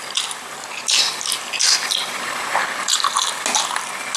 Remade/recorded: recorded